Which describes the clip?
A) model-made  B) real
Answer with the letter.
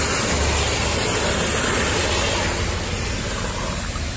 B